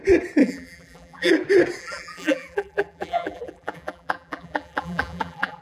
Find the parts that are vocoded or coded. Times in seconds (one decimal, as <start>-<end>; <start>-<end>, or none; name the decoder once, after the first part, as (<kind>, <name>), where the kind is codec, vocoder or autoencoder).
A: 0.4-1.3 (vocoder, BigVGAN v2); 1.8-5.6